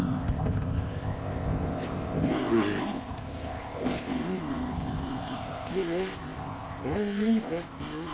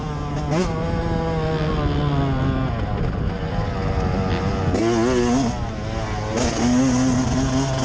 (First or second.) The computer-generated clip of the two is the first